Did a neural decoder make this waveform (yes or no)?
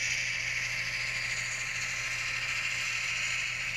no